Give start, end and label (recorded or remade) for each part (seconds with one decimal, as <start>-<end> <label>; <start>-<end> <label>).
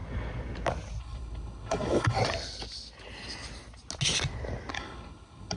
0.0-1.0 recorded; 1.0-2.2 remade; 2.2-4.7 recorded; 4.7-5.6 remade